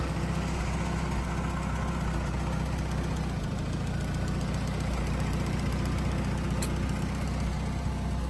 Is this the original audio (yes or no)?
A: yes